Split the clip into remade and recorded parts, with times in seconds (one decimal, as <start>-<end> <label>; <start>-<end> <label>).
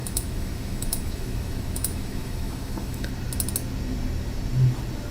0.0-3.1 remade; 3.1-5.1 recorded